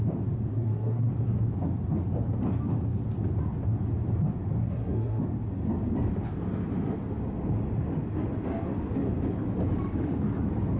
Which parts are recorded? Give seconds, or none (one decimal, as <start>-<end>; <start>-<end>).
0.0-0.5; 1.1-4.6; 5.2-10.8